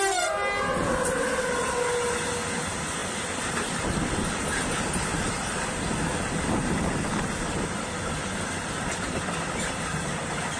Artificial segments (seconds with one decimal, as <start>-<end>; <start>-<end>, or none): 3.0-3.9; 5.1-5.8